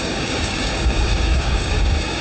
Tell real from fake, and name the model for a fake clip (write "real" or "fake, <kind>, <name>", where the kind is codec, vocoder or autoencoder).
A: fake, codec, DAC